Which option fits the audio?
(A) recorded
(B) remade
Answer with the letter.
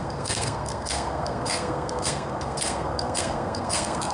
B